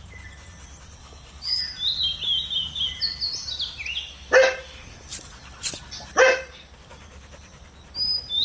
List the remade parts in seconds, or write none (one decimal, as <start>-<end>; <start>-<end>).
1.0-1.6